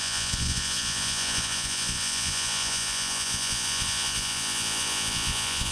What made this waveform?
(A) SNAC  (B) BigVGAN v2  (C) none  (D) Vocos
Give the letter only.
D